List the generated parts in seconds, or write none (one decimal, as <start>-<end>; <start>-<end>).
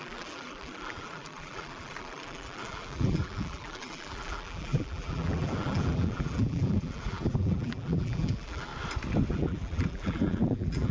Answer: 0.0-8.7; 9.3-10.9